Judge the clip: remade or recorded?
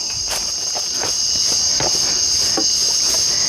recorded